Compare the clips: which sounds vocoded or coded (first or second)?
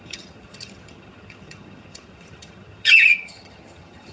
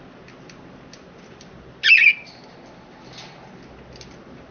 first